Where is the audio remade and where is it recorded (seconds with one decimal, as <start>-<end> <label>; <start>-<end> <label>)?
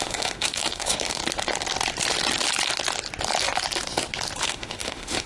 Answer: 0.0-1.2 remade; 1.2-4.4 recorded; 4.4-5.3 remade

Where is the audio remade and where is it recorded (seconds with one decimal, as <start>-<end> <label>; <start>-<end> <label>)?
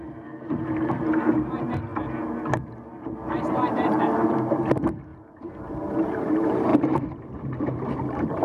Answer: 0.0-1.9 remade; 1.9-2.7 recorded; 2.7-8.4 remade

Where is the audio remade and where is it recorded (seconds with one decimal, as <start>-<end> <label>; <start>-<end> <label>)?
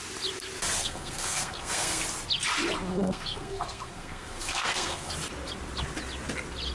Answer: 0.0-0.8 recorded; 0.8-2.0 remade; 2.0-2.9 recorded; 2.9-5.1 remade; 5.1-6.7 recorded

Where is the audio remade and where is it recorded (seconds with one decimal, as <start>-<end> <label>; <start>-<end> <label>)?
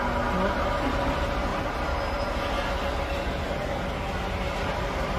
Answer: 0.0-5.2 recorded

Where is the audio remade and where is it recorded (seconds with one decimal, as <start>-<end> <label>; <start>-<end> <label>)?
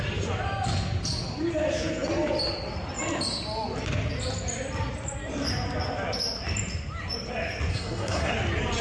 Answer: 0.0-7.7 recorded; 7.7-8.3 remade; 8.3-8.8 recorded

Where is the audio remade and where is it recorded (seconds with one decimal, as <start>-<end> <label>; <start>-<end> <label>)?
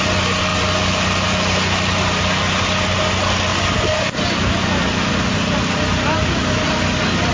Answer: 0.0-7.3 recorded